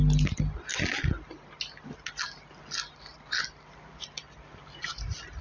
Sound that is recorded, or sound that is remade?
recorded